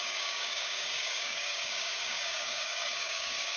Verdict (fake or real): fake